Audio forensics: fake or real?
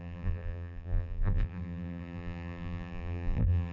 fake